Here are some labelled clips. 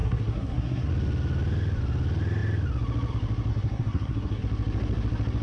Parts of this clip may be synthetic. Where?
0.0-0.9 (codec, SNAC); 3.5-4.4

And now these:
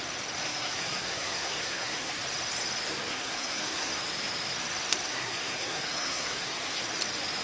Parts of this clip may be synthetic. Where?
0.4-2.1 (codec, SNAC); 3.1-3.9; 5.1-6.8

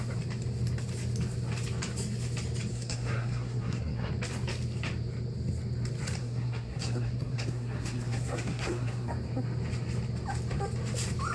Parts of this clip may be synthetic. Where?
2.7-4.1 (codec, SNAC); 6.2-9.1